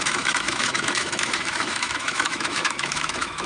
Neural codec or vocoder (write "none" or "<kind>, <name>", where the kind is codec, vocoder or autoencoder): autoencoder, DAC-VAE